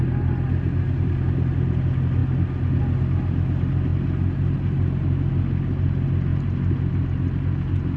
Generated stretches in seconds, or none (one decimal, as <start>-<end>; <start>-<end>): none